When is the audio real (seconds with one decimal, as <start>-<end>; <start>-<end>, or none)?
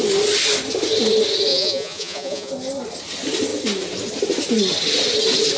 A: 0.0-1.5; 2.5-5.6